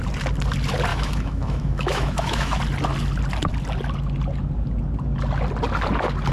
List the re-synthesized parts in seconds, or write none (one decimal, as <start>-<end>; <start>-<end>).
0.9-2.6